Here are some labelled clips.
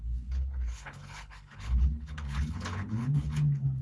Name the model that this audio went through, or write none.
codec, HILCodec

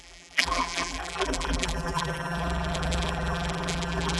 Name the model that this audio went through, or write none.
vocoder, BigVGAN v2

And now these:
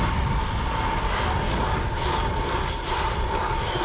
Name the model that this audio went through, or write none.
none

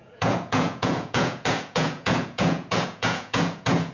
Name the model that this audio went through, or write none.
vocoder, Vocos